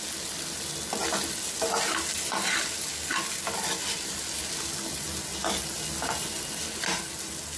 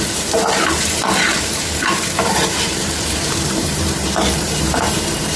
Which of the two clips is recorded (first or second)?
first